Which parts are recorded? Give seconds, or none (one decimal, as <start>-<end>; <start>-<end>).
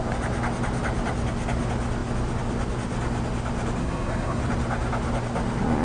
0.0-3.8; 4.4-5.8